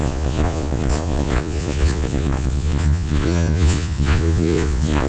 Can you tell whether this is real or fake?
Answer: fake